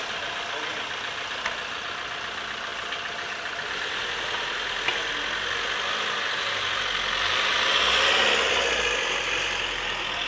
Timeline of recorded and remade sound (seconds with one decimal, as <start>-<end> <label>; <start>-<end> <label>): 0.0-10.3 recorded